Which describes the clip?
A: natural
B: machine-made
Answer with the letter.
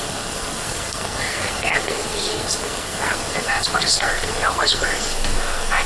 B